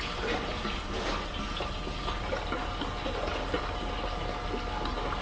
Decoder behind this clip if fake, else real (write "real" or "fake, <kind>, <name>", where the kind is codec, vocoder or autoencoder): real